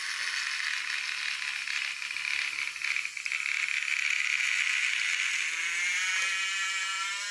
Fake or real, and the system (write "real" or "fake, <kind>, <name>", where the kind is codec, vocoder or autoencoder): real